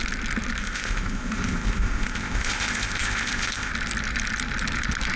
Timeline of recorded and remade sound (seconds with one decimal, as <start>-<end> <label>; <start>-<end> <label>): 0.0-0.6 recorded; 0.6-3.7 remade; 3.7-5.2 recorded